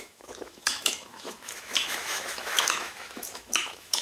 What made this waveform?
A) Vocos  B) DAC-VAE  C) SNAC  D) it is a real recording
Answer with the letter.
B